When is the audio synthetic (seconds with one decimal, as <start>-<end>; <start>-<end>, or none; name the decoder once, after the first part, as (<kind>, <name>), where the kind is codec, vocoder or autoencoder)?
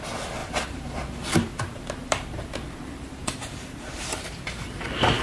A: 0.4-1.0 (vocoder, BigVGAN v2); 1.5-4.6